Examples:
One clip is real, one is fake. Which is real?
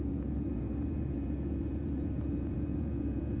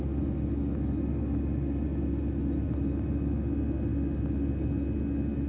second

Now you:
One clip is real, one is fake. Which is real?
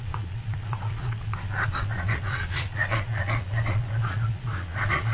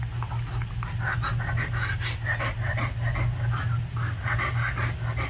second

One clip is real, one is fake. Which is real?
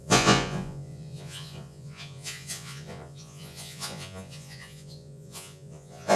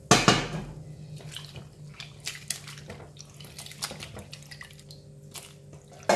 second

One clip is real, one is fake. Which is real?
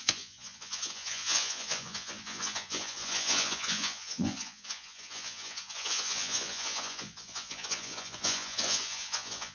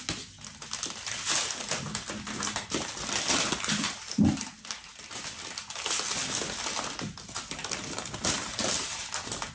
second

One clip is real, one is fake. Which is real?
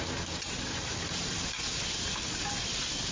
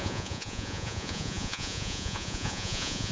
first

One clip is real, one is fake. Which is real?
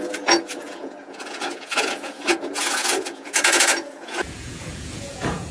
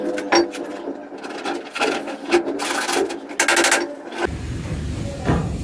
second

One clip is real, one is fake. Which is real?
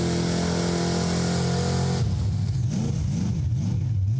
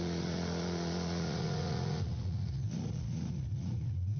first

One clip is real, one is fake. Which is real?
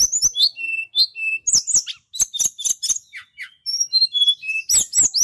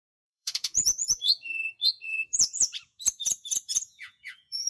first